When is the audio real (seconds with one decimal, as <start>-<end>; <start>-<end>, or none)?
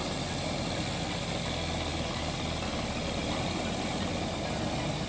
0.0-5.1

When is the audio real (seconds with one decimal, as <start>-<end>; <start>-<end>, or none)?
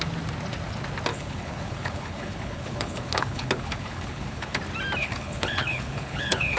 0.0-1.1; 4.6-5.0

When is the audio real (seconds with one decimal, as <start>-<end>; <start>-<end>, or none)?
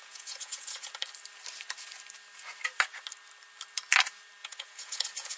0.9-4.4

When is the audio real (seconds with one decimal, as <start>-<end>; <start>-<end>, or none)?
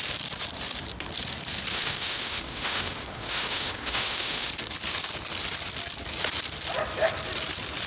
0.0-1.7; 4.5-7.9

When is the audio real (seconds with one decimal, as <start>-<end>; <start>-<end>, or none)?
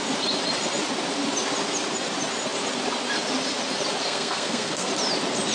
0.0-4.0; 4.9-5.5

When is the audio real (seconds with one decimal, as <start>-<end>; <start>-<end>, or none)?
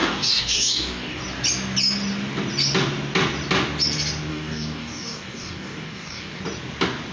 1.2-4.3; 6.4-7.1